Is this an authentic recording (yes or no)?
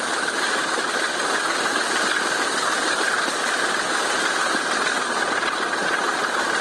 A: yes